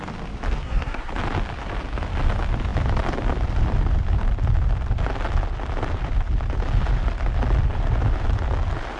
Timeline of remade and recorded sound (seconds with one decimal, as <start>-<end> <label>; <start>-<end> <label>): 0.0-0.6 recorded; 0.6-1.1 remade; 1.1-9.0 recorded